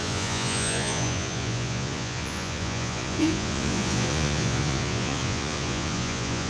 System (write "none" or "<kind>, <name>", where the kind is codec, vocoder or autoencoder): vocoder, Vocos